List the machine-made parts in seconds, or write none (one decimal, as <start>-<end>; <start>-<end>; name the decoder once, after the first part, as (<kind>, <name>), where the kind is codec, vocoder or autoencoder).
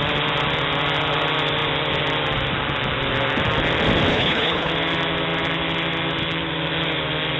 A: 4.1-4.7 (codec, HILCodec)